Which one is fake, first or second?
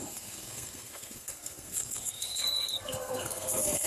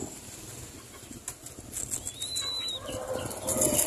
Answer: first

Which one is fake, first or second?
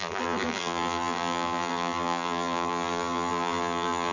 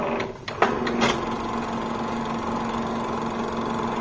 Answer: first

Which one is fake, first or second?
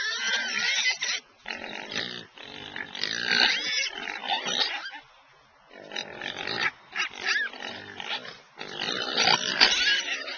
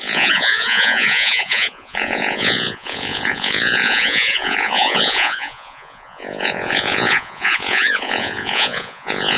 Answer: second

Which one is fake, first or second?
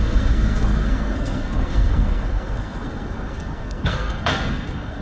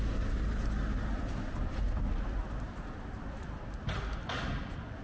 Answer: first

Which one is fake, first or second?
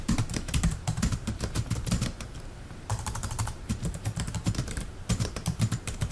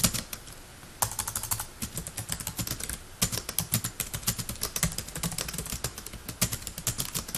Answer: first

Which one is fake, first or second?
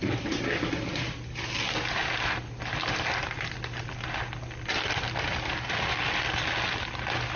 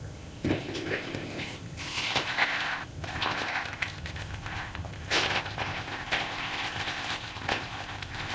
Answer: second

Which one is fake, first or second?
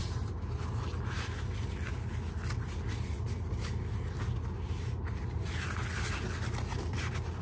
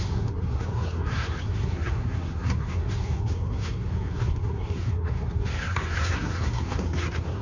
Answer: second